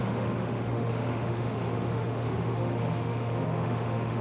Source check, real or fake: fake